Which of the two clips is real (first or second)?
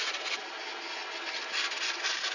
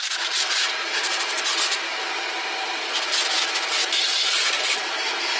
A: first